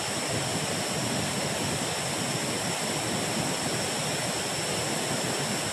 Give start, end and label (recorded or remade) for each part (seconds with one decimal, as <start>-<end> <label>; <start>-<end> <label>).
0.0-5.7 recorded